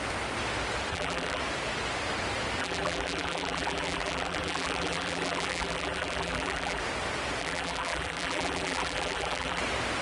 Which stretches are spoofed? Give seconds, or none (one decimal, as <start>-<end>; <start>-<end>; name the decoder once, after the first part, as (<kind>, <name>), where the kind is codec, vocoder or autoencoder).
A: 0.9-1.4 (vocoder, BigVGAN v2); 2.6-6.8; 7.4-9.6